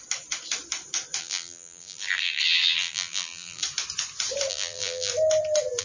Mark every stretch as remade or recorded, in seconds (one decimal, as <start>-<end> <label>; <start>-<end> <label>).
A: 0.0-1.2 recorded; 1.2-3.6 remade; 3.6-4.5 recorded; 4.5-5.1 remade; 5.1-5.8 recorded